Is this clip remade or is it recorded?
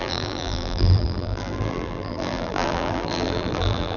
remade